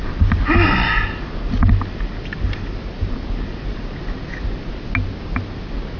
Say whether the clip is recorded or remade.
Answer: recorded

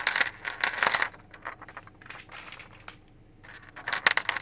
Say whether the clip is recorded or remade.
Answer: recorded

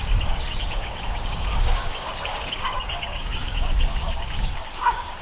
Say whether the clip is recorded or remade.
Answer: remade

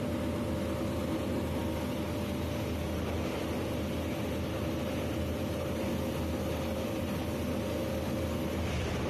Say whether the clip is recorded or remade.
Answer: recorded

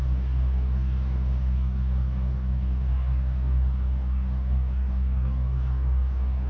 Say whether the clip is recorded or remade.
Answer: remade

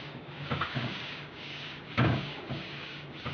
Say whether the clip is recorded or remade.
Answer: remade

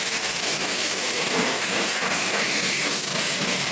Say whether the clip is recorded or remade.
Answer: remade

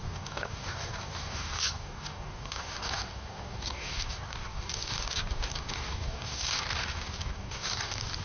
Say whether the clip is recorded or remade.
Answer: remade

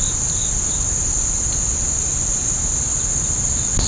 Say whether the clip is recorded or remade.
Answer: recorded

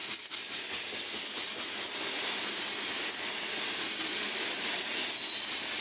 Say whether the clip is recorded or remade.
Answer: recorded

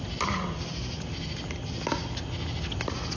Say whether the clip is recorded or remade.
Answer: recorded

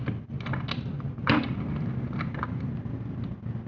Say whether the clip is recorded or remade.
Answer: recorded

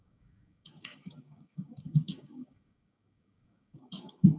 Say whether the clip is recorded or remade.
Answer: remade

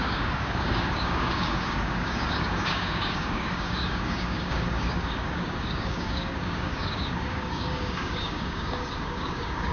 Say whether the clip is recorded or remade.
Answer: remade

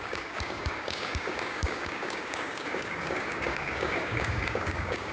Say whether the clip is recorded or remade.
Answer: remade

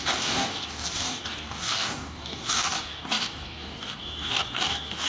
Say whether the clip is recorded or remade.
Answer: remade